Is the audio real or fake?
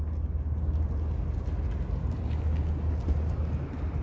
real